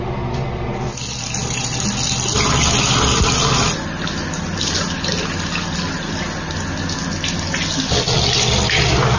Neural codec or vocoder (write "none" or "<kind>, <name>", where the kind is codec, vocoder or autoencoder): none